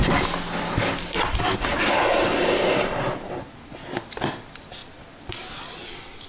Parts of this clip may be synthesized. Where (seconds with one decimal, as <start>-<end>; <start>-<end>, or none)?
none